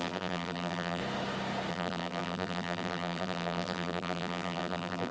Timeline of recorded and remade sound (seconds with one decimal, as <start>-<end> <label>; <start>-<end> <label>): 0.0-1.0 remade; 1.0-1.7 recorded; 1.7-5.1 remade